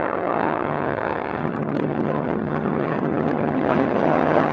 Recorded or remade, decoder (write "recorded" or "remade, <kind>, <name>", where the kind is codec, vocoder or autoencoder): remade, vocoder, HiFi-GAN